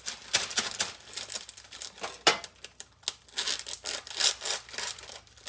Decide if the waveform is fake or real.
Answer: real